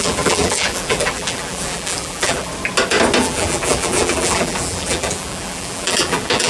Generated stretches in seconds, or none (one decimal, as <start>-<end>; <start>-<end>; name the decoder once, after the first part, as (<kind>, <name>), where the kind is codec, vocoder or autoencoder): 0.0-2.5 (vocoder, BigVGAN v2); 3.2-6.5